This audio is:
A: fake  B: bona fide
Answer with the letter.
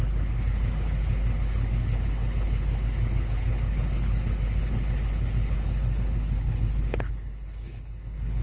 A